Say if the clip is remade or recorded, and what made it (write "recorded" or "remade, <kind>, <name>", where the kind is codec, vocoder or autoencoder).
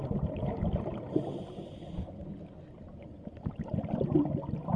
recorded